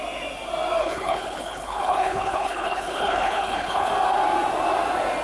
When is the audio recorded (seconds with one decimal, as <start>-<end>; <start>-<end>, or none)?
0.0-0.8; 3.9-5.2